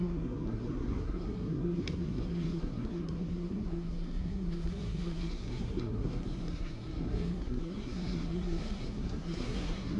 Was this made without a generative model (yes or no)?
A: no